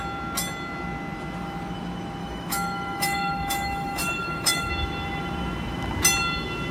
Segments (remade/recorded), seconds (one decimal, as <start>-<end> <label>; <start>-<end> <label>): 0.0-2.2 recorded; 2.2-4.7 remade; 4.7-6.7 recorded